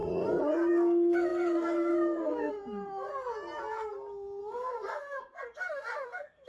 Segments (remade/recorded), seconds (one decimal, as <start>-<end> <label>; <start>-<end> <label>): 0.0-0.7 recorded; 0.7-3.1 remade; 3.1-4.4 recorded; 4.4-6.5 remade